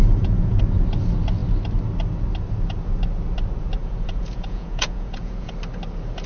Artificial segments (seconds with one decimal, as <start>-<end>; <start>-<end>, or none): 0.0-0.6; 3.8-5.5